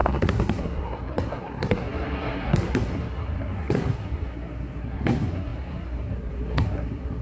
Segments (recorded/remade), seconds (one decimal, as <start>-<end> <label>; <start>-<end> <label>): 0.0-7.2 remade